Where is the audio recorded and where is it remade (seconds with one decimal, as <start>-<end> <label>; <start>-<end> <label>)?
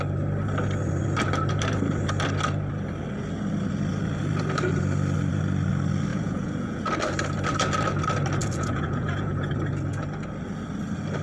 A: 0.0-6.1 recorded; 6.1-6.8 remade; 6.8-8.4 recorded; 8.4-9.5 remade; 9.5-11.2 recorded